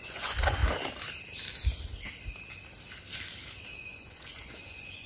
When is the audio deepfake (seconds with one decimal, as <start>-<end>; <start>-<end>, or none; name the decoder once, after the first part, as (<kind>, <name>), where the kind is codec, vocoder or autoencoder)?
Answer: 0.0-0.6 (vocoder, Vocos); 3.7-5.1